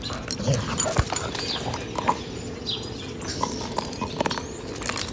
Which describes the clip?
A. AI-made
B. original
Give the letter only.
B